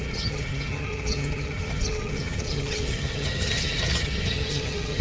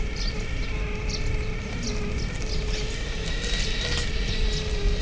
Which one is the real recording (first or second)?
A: second